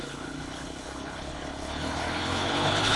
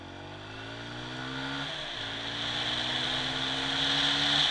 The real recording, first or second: second